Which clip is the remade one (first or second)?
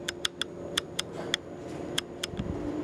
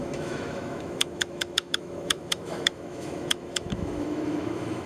second